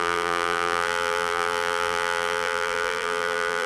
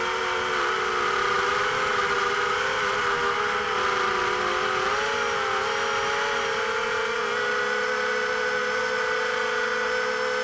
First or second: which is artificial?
first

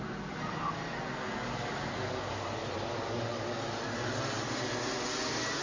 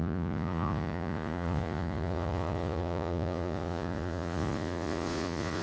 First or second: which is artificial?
second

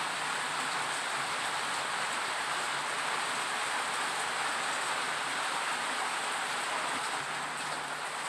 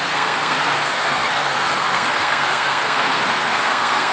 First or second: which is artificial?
second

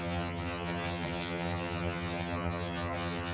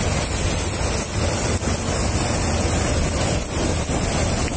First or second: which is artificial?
first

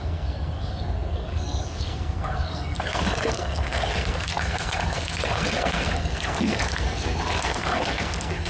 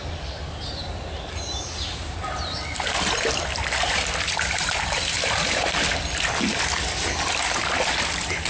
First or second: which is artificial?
first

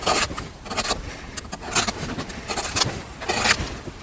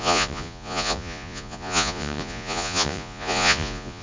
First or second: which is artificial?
second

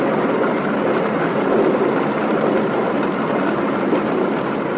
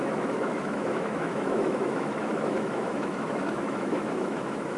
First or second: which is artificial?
second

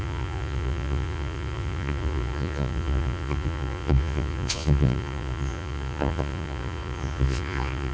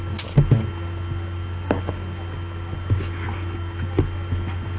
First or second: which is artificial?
first